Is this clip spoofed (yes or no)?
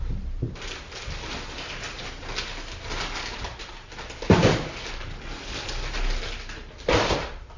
no